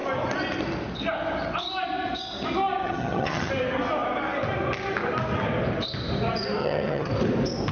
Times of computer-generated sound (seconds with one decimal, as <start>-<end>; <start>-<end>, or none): 2.8-3.5; 6.6-7.1